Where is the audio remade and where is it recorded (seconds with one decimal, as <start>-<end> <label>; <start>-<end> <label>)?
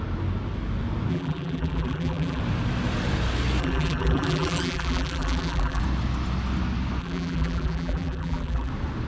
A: 0.0-1.1 recorded; 1.1-2.4 remade; 2.4-3.6 recorded; 3.6-5.8 remade; 5.8-7.0 recorded; 7.0-8.7 remade; 8.7-9.1 recorded